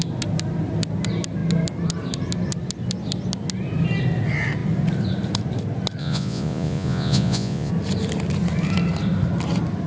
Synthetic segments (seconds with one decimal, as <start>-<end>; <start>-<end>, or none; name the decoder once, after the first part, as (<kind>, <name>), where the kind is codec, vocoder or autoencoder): 6.0-7.7 (vocoder, Vocos)